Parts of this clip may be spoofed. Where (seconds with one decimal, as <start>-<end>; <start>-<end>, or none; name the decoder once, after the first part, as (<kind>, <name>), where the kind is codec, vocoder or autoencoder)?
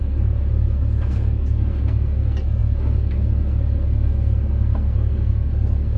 0.0-6.0 (codec, SNAC)